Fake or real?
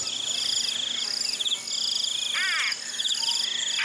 real